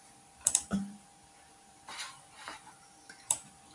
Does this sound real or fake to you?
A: fake